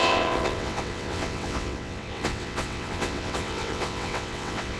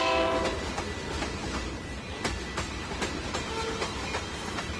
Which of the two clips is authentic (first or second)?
second